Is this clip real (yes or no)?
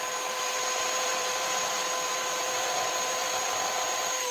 no